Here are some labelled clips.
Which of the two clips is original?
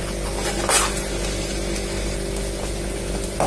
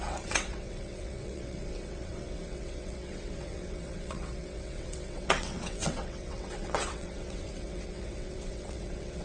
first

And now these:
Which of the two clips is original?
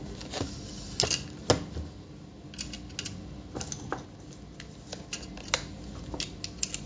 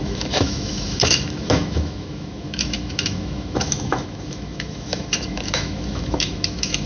first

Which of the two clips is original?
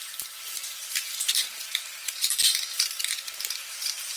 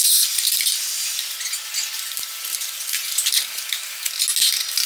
second